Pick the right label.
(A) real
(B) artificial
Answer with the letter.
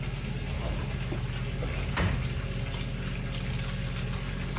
A